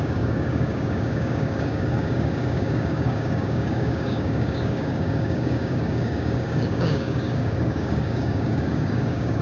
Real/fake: fake